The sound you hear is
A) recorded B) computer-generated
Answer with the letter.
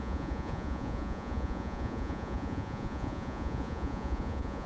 B